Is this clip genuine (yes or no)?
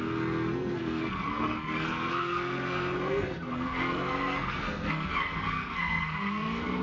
no